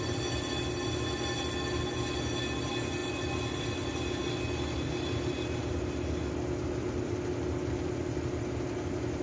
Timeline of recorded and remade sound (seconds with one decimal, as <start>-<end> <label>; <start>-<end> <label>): 0.0-9.2 recorded